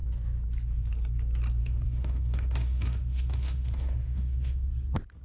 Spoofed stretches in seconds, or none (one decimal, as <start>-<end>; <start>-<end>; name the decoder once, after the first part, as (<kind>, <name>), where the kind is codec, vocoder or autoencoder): 1.6-4.7 (autoencoder, DAC-VAE)